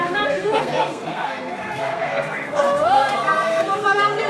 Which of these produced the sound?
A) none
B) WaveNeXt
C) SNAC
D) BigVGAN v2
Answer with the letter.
C